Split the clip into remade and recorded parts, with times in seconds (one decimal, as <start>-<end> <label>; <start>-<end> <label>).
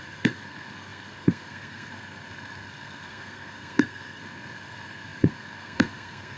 0.0-6.4 remade